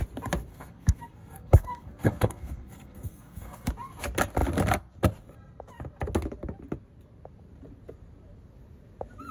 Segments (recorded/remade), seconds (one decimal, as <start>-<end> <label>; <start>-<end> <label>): 0.0-0.5 recorded; 0.5-3.7 remade; 3.7-9.3 recorded